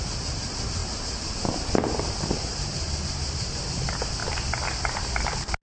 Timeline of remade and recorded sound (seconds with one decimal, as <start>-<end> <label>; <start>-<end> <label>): 0.0-5.6 recorded